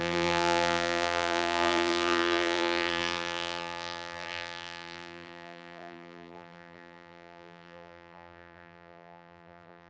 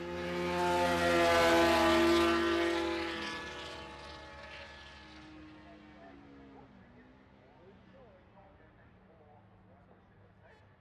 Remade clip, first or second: first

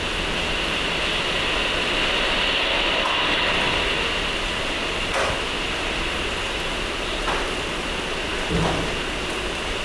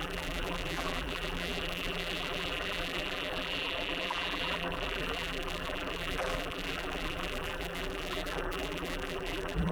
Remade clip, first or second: second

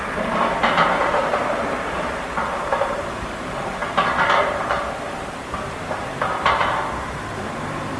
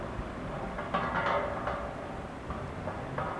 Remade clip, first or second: first